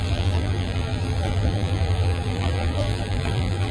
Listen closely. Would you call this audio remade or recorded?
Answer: remade